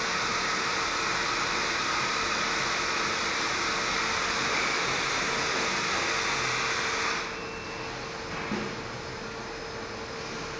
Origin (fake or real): real